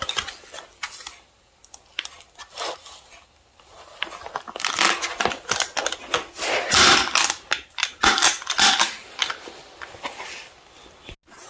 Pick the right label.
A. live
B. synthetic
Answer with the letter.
A